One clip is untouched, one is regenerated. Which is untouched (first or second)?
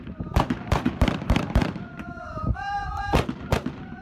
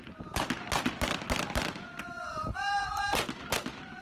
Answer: second